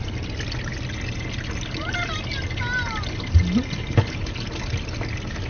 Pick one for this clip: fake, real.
real